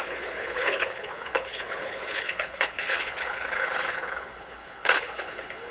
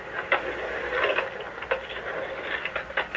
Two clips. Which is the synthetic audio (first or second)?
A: first